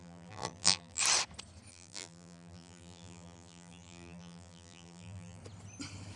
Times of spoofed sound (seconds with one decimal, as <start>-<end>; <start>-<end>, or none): 0.0-1.0; 1.7-5.4